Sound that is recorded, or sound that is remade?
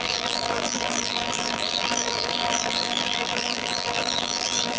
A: remade